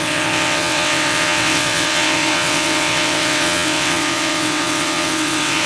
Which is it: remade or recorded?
remade